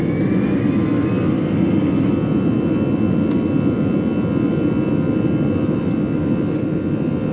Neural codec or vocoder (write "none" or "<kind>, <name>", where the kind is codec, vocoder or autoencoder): none